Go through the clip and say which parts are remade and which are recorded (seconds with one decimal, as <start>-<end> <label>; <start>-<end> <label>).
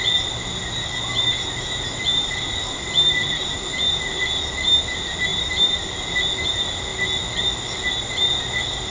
0.0-2.1 recorded; 2.1-2.8 remade; 2.8-3.2 recorded; 3.2-4.7 remade; 4.7-5.3 recorded; 5.3-6.0 remade; 6.0-8.9 recorded